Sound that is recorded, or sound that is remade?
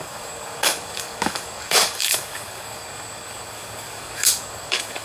remade